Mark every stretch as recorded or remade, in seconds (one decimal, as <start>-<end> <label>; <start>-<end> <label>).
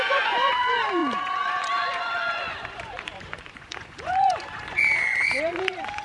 0.0-6.0 remade